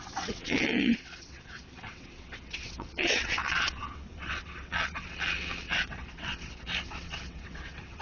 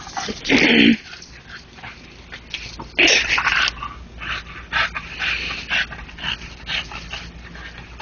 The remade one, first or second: first